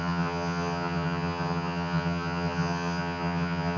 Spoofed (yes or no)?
yes